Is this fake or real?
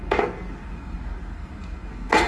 fake